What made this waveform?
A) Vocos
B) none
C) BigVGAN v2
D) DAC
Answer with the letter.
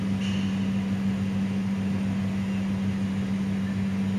B